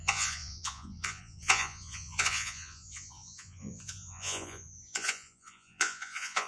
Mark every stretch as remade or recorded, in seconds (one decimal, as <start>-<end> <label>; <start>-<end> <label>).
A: 0.0-6.5 remade